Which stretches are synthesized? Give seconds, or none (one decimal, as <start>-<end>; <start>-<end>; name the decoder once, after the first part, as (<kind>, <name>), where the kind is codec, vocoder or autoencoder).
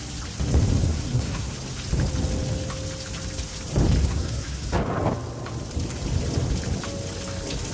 0.8-1.5 (codec, SNAC); 4.0-4.7